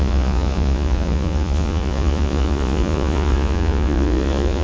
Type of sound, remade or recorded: remade